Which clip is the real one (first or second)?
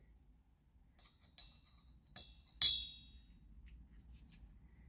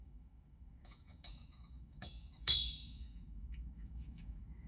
first